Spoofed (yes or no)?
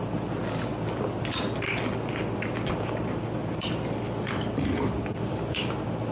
no